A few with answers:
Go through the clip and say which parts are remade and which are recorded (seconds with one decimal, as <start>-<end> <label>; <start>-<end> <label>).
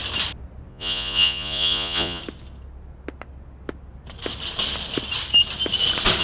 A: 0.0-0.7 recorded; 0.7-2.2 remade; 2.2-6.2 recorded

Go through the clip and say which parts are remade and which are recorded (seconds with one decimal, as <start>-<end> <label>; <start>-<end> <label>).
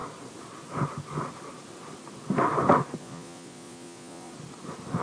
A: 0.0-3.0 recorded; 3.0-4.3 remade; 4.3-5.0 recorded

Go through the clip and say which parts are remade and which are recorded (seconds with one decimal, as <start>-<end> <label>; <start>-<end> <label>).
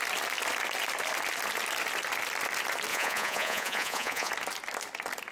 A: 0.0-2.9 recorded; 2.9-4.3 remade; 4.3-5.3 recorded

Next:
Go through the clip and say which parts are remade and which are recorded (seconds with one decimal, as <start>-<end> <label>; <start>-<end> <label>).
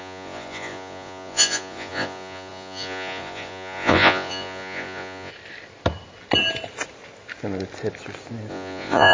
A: 0.0-5.3 remade; 5.3-8.5 recorded; 8.5-9.1 remade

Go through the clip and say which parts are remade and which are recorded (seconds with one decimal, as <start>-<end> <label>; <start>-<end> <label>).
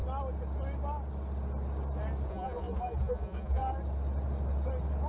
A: 0.0-2.3 recorded; 2.3-3.6 remade; 3.6-5.1 recorded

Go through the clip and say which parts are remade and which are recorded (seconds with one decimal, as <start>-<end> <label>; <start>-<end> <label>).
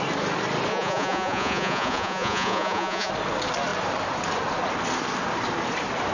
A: 0.0-0.7 recorded; 0.7-3.1 remade; 3.1-6.1 recorded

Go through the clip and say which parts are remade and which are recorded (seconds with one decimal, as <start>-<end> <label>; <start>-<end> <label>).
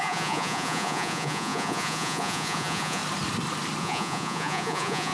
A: 0.0-3.0 remade; 3.0-3.8 recorded; 3.8-5.1 remade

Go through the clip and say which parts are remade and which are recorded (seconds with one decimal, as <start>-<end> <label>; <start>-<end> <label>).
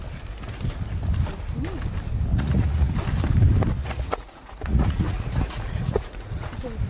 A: 0.0-2.3 recorded; 2.3-2.9 remade; 2.9-3.8 recorded; 3.8-6.5 remade; 6.5-6.9 recorded